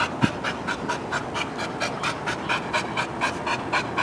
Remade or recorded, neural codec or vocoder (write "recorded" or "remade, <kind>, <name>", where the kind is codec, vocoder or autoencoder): recorded